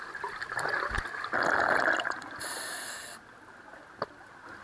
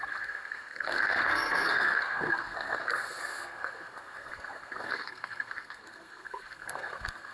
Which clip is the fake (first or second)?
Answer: second